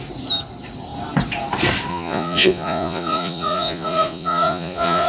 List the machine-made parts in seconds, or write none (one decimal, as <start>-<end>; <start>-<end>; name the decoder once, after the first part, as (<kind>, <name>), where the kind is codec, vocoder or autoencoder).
1.9-5.1 (vocoder, Vocos)